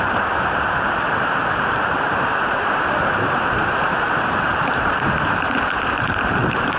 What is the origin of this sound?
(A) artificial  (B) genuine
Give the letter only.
A